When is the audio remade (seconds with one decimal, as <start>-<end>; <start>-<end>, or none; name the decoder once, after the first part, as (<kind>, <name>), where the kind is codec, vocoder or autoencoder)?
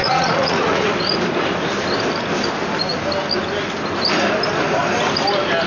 0.0-0.9 (vocoder, Vocos)